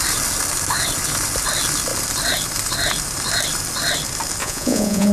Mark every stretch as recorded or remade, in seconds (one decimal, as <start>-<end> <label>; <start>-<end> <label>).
0.0-4.4 recorded; 4.4-5.1 remade

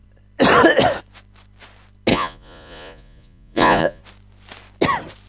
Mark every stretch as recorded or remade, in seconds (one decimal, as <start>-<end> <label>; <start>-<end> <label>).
0.0-2.1 recorded; 2.1-4.0 remade; 4.0-5.3 recorded